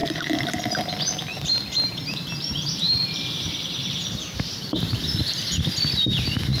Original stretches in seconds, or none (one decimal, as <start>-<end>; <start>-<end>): 0.6-1.3; 5.0-6.6